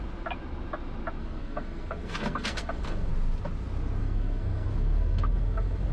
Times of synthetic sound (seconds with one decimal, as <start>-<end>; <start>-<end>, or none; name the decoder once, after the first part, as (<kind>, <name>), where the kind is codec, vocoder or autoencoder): 1.2-3.1 (codec, SNAC); 4.0-5.9